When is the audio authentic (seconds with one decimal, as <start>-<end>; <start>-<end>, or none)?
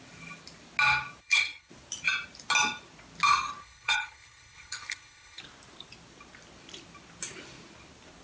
0.0-1.2; 1.7-3.6; 5.4-8.2